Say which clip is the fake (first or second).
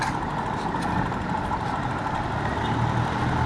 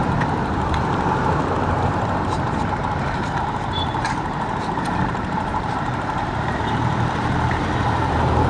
second